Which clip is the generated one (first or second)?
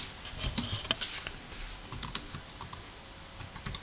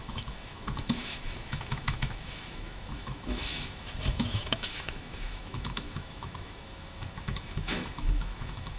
second